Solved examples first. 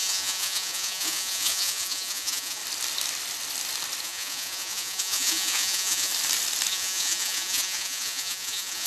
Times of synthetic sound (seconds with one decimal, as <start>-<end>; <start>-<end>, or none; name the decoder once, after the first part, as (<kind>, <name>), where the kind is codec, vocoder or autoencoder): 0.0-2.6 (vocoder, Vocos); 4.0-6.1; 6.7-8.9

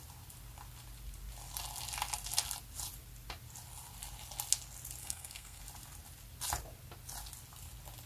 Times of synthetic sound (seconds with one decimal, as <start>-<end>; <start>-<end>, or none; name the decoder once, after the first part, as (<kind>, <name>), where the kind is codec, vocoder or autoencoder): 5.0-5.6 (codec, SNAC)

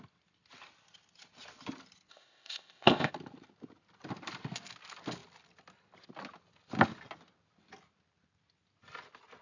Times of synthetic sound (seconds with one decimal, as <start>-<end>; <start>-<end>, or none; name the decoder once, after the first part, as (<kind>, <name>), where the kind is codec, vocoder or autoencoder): 2.1-3.1 (codec, ZipCodec)